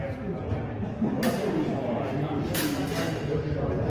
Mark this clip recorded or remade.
recorded